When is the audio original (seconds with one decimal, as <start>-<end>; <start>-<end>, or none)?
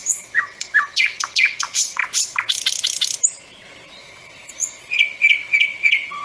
2.0-4.0